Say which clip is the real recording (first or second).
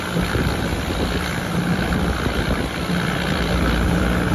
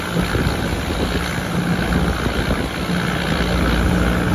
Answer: second